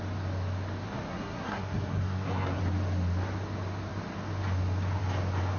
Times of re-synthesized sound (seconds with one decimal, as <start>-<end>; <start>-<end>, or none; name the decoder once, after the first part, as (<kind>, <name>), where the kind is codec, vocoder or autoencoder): 1.1-2.6 (codec, SNAC)